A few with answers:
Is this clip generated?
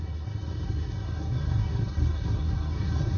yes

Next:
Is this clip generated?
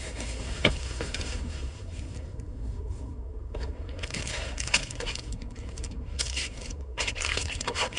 yes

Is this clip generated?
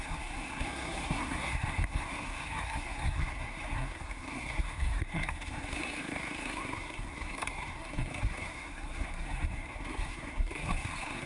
yes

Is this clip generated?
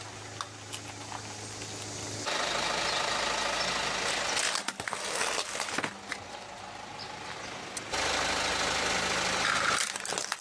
no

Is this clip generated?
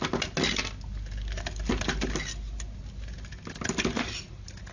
no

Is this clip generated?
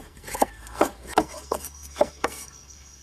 yes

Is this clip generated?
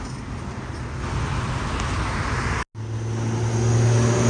no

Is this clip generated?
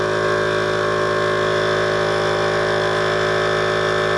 no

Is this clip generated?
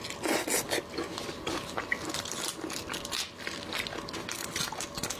no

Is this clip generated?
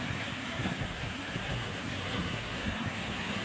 yes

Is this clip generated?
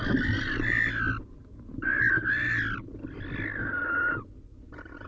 no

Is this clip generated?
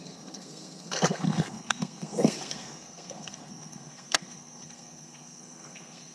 yes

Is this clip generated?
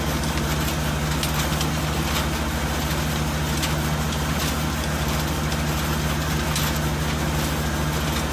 no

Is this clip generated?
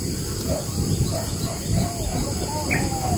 no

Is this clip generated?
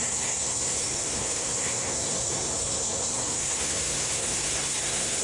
yes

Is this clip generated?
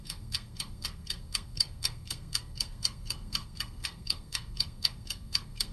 yes